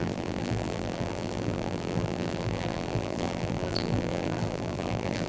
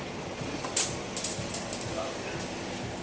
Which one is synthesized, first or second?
first